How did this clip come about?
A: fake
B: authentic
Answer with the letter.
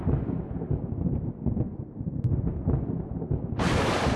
B